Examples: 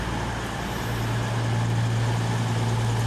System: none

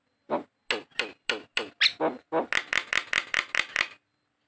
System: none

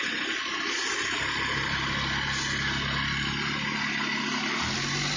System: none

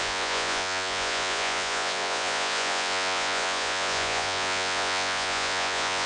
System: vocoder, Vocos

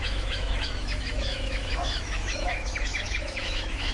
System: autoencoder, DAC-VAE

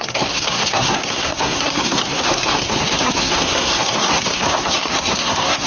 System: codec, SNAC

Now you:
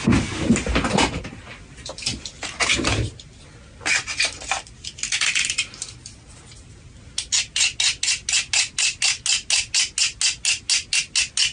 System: none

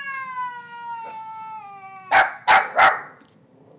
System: none